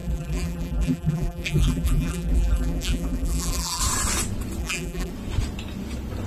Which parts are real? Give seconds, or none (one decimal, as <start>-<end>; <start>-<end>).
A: 3.8-4.6; 5.1-6.3